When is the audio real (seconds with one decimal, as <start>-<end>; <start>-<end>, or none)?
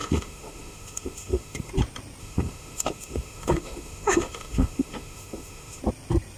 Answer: 1.7-2.2; 5.8-6.4